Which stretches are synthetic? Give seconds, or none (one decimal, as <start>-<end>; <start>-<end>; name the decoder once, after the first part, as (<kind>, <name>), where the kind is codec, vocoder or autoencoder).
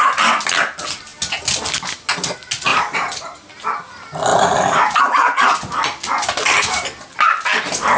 2.7-3.6 (vocoder, BigVGAN v2); 4.3-5.0